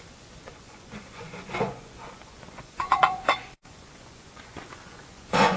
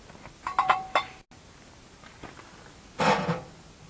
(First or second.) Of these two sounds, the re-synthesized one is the first